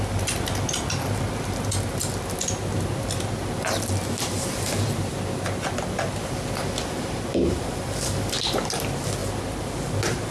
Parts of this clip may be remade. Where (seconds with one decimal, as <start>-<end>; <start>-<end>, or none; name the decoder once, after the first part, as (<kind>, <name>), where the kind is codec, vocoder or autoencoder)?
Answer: none